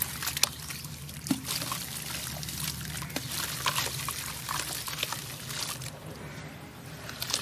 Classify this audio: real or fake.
real